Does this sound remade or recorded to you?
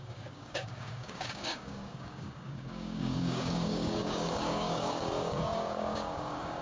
remade